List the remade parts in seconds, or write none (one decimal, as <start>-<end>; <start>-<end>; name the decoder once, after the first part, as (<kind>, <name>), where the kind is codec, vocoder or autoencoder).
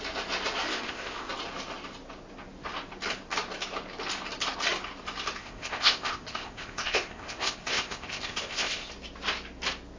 0.7-1.3 (codec, ZipCodec); 5.4-8.9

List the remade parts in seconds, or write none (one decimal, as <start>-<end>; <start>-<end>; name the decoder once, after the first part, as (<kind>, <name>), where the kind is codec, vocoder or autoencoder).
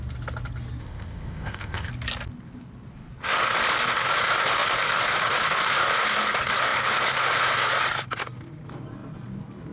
0.8-1.9 (codec, ZipCodec)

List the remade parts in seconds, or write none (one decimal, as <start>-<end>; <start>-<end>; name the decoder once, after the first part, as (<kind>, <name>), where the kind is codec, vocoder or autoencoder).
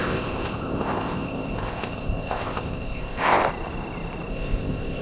0.0-3.4 (codec, ZipCodec); 4.3-5.0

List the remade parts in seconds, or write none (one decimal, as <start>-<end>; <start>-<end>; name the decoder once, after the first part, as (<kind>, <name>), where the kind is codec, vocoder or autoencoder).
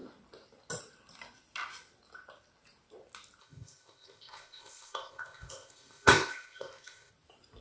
3.4-7.1 (codec, ZipCodec)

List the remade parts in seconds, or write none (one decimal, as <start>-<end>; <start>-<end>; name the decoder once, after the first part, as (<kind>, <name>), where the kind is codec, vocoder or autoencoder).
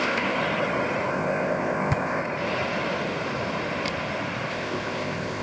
0.0-0.4 (codec, ZipCodec); 1.1-2.2; 4.5-5.4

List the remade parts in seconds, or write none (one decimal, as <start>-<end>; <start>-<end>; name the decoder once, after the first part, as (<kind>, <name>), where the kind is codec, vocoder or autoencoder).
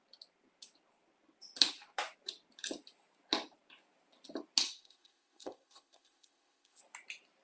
4.6-6.8 (codec, ZipCodec)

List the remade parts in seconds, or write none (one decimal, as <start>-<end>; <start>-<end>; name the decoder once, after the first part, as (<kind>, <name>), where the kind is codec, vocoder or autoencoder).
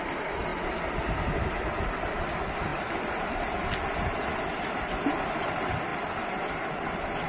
none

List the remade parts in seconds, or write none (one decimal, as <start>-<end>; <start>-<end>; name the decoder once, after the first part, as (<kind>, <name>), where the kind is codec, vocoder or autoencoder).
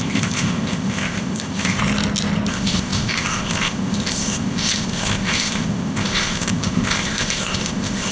0.0-1.8 (codec, ZipCodec); 2.5-8.1